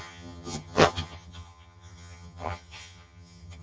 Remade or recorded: remade